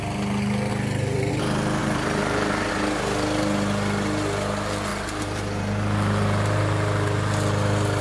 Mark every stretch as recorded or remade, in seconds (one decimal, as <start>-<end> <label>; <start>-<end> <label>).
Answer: 0.0-0.7 recorded; 0.7-1.3 remade; 1.3-1.8 recorded; 1.8-2.7 remade; 2.7-8.0 recorded